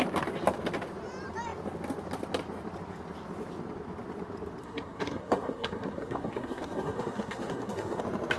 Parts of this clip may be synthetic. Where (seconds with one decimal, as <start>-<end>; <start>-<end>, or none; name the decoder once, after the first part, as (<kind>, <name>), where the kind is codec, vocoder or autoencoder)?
4.6-8.0 (codec, SNAC)